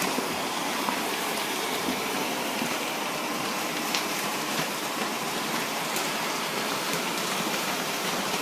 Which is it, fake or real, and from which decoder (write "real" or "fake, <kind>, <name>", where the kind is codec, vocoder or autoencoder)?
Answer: fake, vocoder, BigVGAN v2